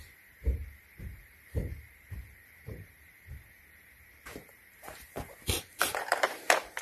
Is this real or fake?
fake